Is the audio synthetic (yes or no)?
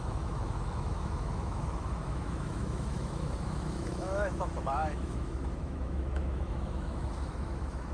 yes